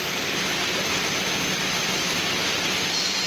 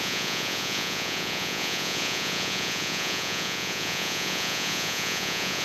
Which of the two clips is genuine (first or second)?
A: first